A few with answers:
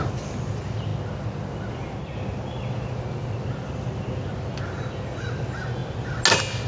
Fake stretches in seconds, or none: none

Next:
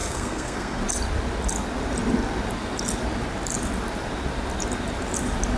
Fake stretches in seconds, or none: 0.0-0.8 (codec, SNAC)

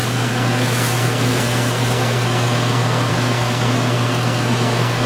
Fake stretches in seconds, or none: 0.0-5.1 (codec, SNAC)